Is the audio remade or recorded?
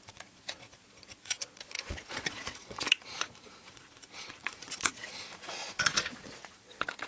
remade